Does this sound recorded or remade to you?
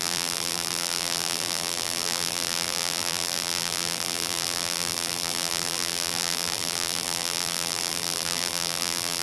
remade